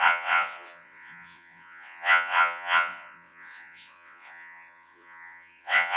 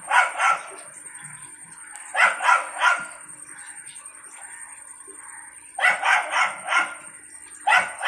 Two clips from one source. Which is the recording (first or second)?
second